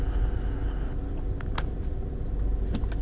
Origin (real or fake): real